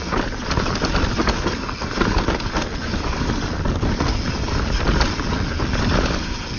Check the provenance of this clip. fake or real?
real